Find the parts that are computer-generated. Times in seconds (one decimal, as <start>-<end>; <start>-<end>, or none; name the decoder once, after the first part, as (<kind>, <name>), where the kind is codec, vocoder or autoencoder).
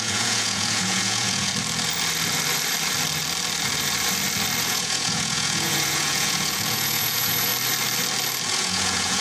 0.0-1.5 (vocoder, Vocos); 4.6-7.5; 8.5-9.2